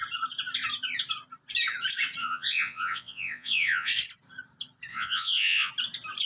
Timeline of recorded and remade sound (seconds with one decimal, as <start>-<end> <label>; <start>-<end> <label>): 0.0-2.2 recorded; 2.2-3.9 remade; 3.9-4.9 recorded; 4.9-5.7 remade; 5.7-6.3 recorded